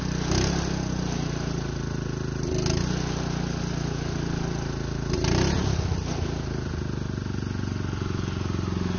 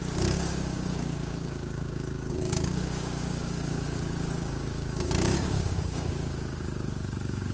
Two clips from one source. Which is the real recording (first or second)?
first